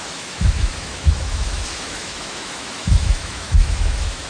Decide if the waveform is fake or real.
fake